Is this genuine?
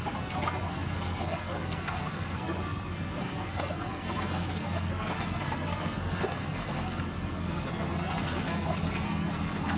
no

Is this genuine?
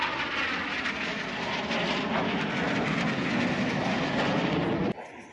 yes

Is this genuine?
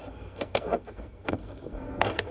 no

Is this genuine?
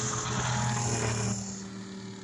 yes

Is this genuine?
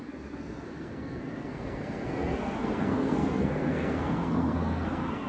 no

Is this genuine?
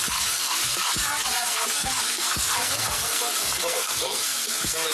no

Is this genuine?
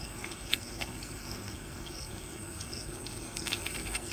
no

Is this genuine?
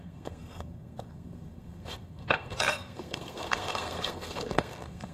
no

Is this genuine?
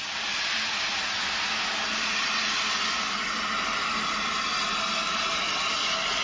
yes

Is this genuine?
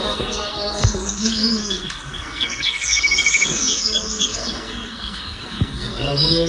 no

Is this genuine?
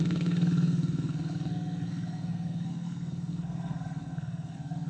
no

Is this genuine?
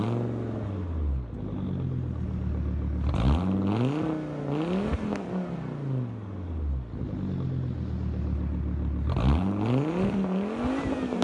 yes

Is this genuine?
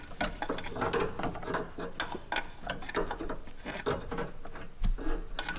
yes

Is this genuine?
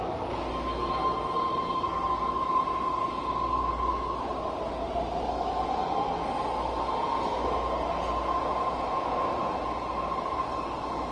yes